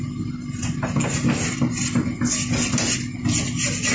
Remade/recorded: recorded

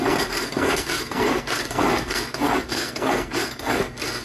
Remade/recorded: remade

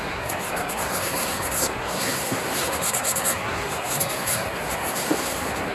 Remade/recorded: remade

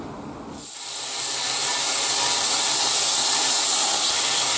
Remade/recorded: recorded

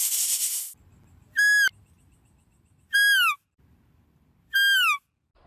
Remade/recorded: recorded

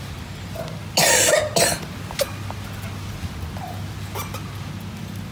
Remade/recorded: recorded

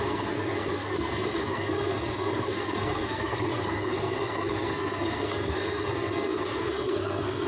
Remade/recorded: remade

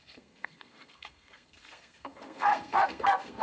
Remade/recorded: remade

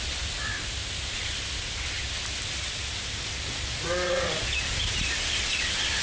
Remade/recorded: recorded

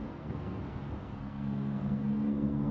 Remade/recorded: remade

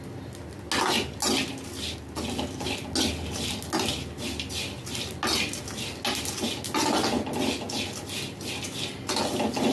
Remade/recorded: recorded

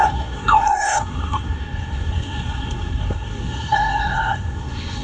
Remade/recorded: remade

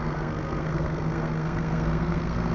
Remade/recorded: remade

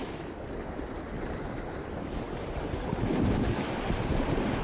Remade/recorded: recorded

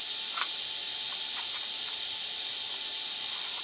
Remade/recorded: recorded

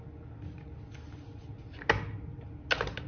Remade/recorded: recorded